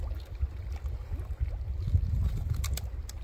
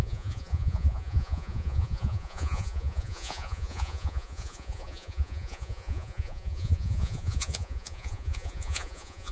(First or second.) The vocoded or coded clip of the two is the second